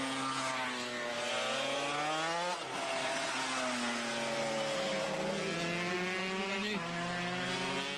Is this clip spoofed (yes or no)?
no